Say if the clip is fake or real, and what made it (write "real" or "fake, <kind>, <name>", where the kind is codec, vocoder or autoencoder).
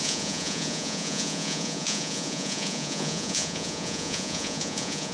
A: fake, vocoder, Vocos